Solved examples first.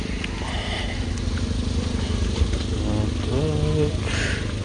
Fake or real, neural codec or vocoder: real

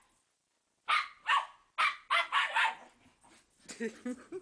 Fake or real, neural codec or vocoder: real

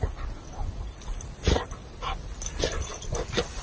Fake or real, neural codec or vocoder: real